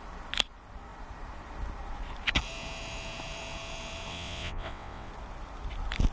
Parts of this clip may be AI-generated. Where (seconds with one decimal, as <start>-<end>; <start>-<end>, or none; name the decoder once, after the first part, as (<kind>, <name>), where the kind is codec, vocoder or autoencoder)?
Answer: 4.1-5.1 (vocoder, WaveNeXt)

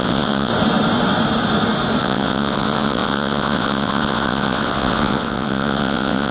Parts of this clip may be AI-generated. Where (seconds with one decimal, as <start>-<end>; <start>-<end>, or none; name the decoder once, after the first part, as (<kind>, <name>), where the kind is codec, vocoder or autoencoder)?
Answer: 0.0-0.5 (vocoder, WaveNeXt); 2.0-6.3

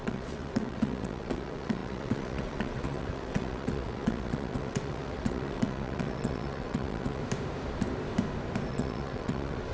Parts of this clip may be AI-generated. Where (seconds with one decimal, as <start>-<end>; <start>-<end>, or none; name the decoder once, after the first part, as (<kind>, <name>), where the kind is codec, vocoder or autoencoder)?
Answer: 0.0-7.2 (vocoder, WaveNeXt); 8.7-9.7

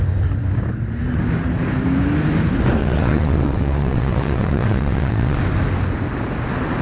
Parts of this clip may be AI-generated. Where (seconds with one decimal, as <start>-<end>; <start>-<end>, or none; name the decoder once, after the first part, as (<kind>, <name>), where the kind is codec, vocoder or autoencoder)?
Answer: 2.8-5.4 (vocoder, WaveNeXt)

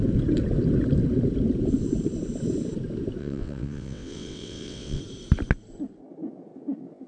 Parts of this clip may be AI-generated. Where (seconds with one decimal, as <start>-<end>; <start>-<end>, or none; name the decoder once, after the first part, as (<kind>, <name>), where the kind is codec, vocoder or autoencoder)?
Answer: 3.2-5.0 (vocoder, WaveNeXt)

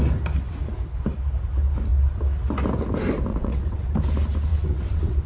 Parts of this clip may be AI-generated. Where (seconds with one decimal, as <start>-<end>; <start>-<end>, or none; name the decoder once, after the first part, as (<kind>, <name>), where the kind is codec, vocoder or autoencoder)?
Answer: 3.3-3.9 (vocoder, WaveNeXt); 4.5-5.3